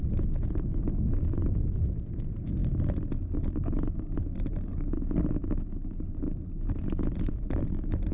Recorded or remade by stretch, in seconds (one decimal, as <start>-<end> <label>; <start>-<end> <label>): 0.0-8.1 recorded